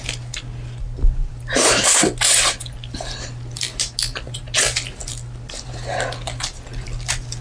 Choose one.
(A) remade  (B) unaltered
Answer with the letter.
B